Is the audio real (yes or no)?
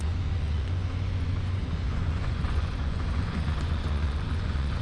no